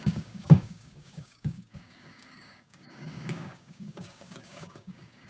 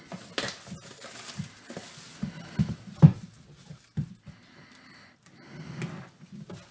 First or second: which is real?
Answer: second